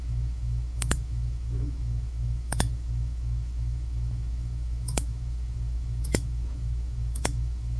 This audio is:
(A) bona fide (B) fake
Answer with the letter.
B